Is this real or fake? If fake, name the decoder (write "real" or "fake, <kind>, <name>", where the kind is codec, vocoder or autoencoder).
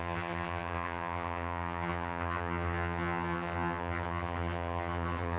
fake, vocoder, HiFi-GAN